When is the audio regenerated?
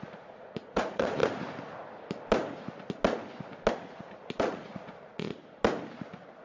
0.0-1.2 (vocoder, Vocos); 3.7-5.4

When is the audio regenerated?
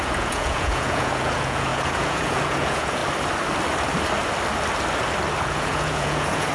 0.0-3.0 (vocoder, Vocos); 5.4-6.5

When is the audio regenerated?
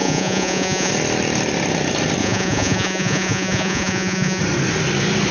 0.0-0.9 (vocoder, Vocos); 2.2-4.4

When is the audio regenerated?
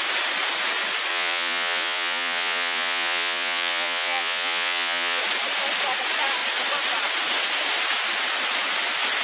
1.1-5.2 (vocoder, Vocos)